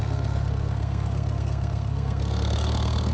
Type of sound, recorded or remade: remade